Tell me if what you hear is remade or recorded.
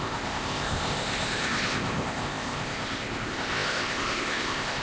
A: remade